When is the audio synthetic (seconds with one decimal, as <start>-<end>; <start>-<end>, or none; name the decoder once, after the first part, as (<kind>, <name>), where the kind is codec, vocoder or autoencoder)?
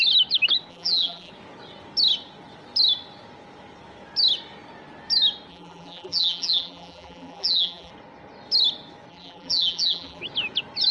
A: 0.7-1.3 (vocoder, BigVGAN v2); 5.5-7.9; 9.1-10.2